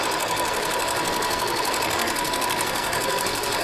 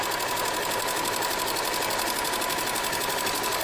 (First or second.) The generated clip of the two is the first